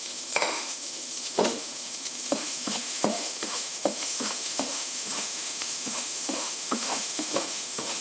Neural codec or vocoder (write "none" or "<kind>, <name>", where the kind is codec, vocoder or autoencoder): autoencoder, DAC-VAE